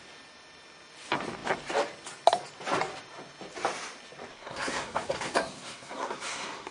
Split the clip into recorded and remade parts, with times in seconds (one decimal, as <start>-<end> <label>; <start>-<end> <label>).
0.0-4.3 recorded; 4.3-6.7 remade